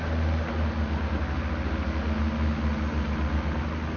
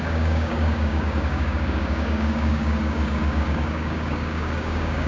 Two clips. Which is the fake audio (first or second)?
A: second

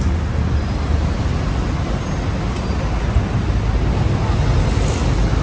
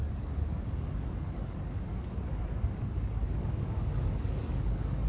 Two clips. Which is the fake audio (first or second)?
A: second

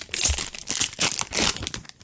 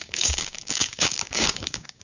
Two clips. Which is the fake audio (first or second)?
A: second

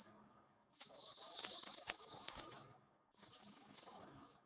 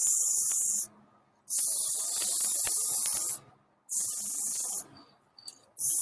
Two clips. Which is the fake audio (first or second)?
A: first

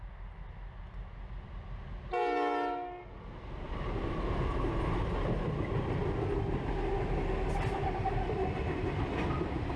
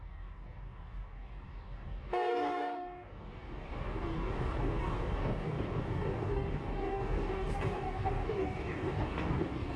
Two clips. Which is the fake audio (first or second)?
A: second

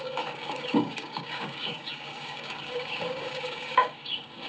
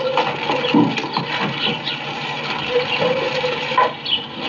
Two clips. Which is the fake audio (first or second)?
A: first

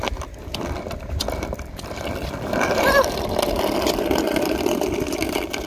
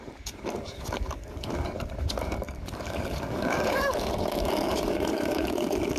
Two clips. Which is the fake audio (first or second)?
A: second